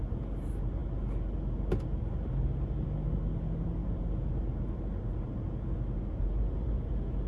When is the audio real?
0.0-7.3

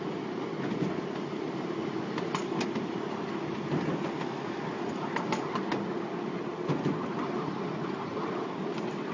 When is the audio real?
0.0-9.1

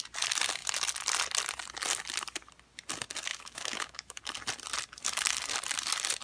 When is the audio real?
0.0-3.3; 4.2-6.2